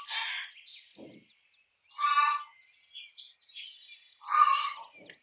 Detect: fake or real real